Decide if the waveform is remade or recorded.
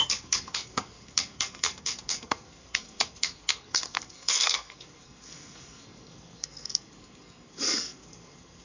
remade